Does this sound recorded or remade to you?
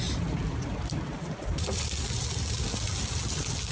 recorded